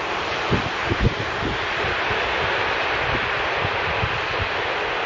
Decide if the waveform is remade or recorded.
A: recorded